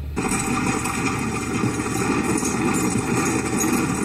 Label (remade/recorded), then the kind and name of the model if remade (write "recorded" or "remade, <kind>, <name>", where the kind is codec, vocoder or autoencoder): recorded